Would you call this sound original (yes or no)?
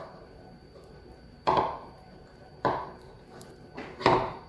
no